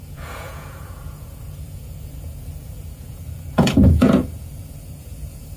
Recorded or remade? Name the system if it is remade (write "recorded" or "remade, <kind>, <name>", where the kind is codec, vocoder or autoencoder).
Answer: remade, vocoder, Vocos